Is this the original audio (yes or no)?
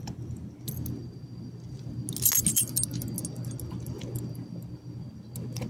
yes